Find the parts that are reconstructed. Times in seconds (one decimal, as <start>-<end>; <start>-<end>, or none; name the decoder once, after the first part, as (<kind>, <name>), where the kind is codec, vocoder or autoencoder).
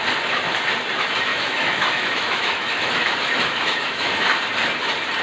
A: 1.3-4.4 (autoencoder, DAC-VAE)